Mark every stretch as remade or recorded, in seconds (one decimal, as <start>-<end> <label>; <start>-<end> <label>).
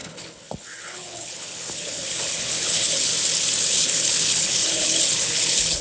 0.0-3.1 remade; 3.1-3.6 recorded; 3.6-5.8 remade